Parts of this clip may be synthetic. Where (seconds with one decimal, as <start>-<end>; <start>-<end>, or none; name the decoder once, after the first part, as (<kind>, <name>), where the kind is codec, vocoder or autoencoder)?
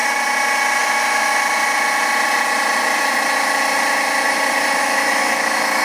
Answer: 0.8-1.3 (autoencoder, DAC-VAE); 4.8-5.8